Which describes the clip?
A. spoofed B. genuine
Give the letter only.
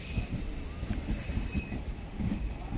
B